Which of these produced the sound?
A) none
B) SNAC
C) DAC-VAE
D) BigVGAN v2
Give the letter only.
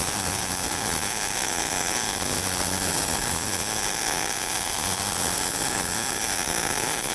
C